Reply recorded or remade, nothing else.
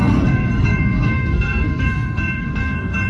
remade